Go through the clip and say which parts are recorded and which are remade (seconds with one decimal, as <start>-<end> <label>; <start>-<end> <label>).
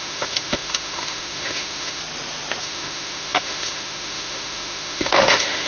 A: 0.0-2.0 remade; 2.0-2.6 recorded; 2.6-5.7 remade